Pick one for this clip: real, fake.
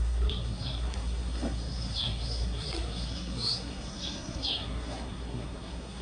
fake